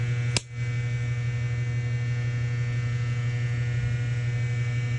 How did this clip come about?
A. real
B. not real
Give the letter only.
A